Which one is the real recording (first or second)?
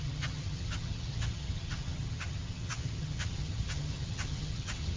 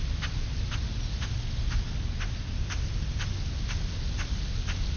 second